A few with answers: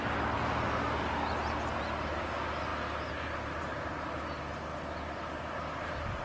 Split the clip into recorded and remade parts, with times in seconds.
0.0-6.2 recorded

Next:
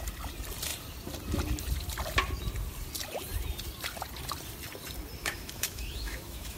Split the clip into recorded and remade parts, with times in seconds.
0.0-5.2 recorded; 5.2-6.6 remade